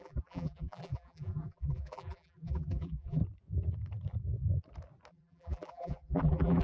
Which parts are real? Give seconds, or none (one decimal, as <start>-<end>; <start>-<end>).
3.2-5.1